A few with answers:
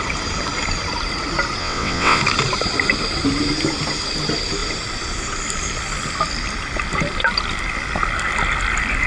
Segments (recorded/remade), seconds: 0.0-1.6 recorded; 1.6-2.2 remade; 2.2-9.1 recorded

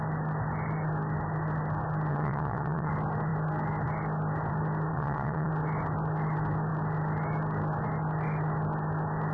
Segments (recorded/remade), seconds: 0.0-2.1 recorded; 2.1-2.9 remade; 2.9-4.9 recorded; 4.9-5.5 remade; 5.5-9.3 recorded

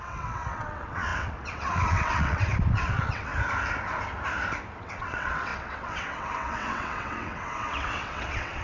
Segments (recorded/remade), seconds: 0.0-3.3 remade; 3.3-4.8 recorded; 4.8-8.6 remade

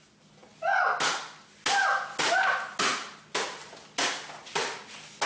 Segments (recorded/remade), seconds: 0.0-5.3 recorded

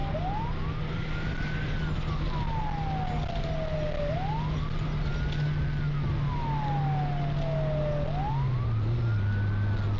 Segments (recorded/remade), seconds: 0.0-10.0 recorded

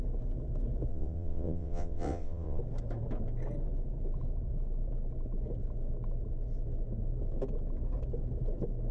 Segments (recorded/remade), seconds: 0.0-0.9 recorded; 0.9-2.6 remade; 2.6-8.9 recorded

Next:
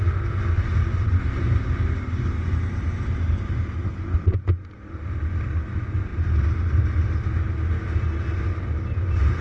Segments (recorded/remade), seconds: 0.0-9.4 recorded

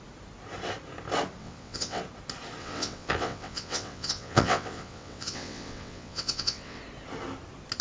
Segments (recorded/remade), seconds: 0.0-1.4 recorded; 1.4-2.0 remade; 2.0-2.6 recorded; 2.6-6.8 remade; 6.8-7.8 recorded